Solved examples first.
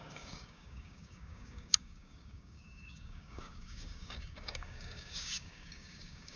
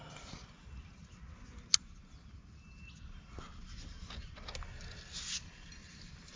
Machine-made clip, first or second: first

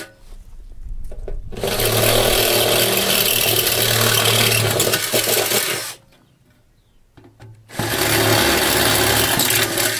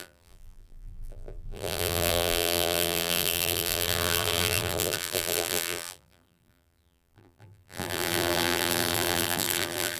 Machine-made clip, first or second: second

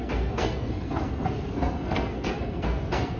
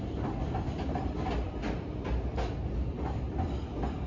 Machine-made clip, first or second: first